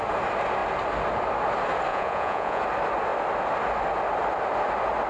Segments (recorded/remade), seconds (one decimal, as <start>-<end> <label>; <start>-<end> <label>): 0.0-1.9 recorded; 1.9-2.6 remade; 2.6-5.1 recorded